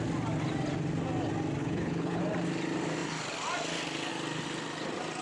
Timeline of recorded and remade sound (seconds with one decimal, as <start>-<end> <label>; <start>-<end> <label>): 0.0-1.6 recorded; 1.6-2.2 remade; 2.2-5.2 recorded